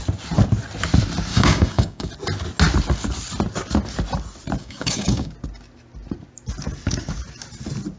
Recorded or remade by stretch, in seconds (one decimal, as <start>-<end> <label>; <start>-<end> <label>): 0.0-1.3 recorded; 1.3-2.1 remade; 2.1-4.6 recorded; 4.6-5.3 remade; 5.3-8.0 recorded